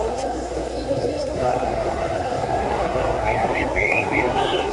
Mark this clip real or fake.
fake